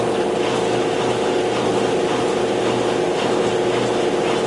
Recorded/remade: recorded